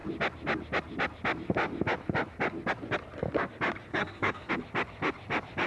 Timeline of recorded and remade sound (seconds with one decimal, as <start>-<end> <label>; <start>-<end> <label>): 0.0-3.9 recorded; 3.9-4.5 remade; 4.5-5.7 recorded